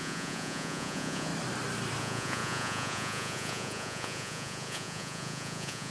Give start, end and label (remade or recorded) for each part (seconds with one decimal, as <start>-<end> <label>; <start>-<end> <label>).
0.0-1.3 remade; 1.3-2.0 recorded; 2.0-5.9 remade